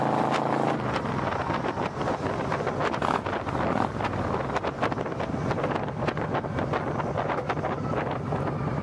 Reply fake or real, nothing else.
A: real